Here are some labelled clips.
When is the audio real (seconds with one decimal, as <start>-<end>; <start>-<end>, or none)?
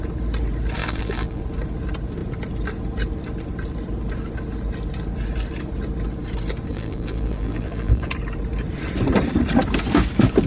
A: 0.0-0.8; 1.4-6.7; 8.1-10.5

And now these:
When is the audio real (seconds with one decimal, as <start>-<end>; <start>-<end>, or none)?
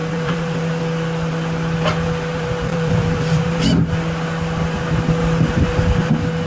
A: 0.7-2.3; 3.6-5.2; 6.1-6.5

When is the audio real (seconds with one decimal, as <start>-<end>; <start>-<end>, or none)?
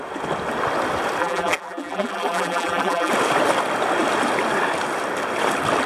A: 0.0-1.2; 3.1-5.9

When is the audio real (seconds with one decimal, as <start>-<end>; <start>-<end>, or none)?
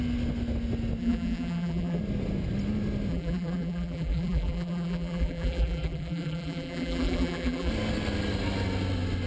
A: 0.0-1.0; 2.0-3.1; 7.7-9.3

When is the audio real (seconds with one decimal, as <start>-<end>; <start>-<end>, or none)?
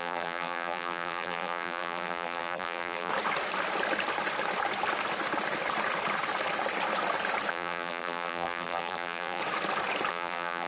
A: 3.1-7.5; 9.4-10.1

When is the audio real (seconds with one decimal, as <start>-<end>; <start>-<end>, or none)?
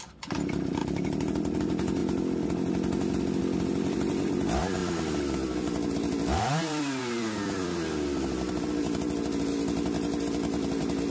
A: 0.8-1.6; 2.0-3.4; 4.8-5.3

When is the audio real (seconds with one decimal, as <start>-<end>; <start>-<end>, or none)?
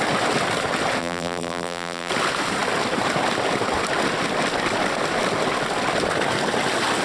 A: 0.0-1.0; 2.1-7.0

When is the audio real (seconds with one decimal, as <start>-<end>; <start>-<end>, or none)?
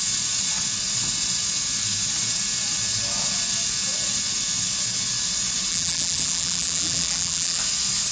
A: 0.0-5.7; 7.6-8.1